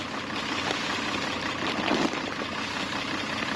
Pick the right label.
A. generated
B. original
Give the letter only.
B